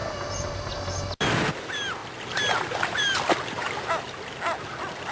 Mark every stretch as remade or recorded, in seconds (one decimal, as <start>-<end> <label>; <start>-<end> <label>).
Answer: 0.0-5.1 recorded